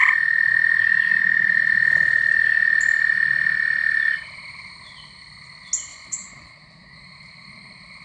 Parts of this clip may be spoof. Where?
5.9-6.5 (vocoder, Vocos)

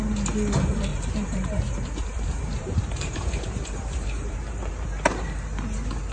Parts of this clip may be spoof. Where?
0.9-4.6 (vocoder, BigVGAN v2)

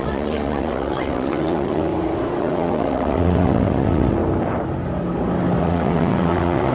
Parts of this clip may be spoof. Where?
0.0-1.9 (vocoder, WaveNeXt); 2.4-4.2; 5.6-6.7

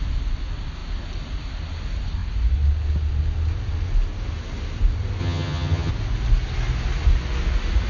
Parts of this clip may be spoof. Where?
5.2-5.9 (vocoder, HiFi-GAN)

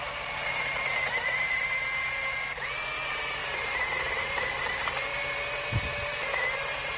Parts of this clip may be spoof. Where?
1.1-7.0 (vocoder, BigVGAN v2)